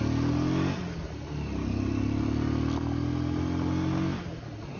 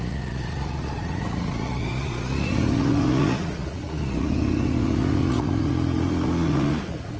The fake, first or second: second